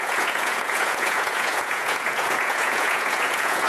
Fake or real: fake